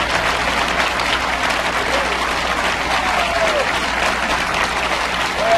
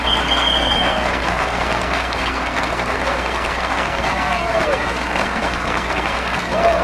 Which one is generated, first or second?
second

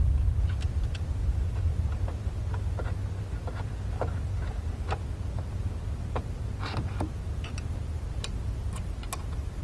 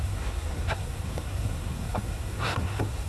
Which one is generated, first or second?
second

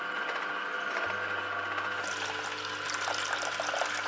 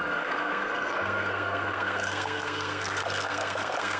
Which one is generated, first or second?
second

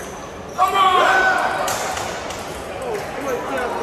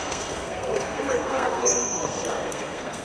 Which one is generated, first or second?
second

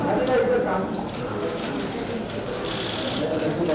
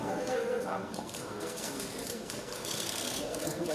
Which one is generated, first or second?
second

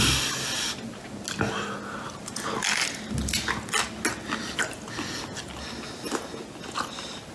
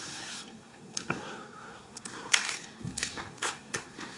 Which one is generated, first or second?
second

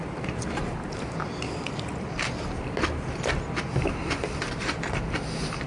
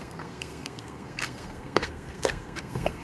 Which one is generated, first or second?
second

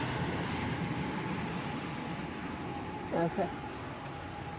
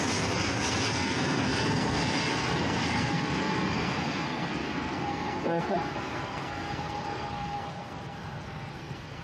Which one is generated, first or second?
second